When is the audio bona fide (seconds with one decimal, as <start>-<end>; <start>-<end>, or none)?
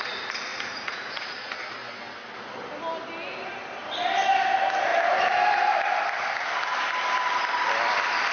0.0-0.5; 1.5-8.3